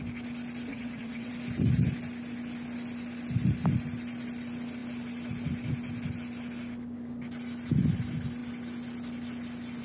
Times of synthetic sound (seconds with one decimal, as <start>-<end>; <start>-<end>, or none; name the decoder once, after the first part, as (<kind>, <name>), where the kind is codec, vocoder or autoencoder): 0.7-1.3 (vocoder, WaveNeXt)